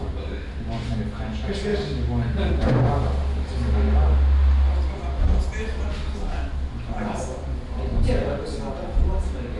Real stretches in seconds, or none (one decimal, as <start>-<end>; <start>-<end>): 0.0-7.9; 8.7-9.6